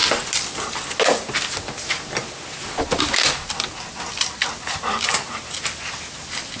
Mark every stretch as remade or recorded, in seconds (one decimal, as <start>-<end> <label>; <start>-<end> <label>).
0.0-6.6 recorded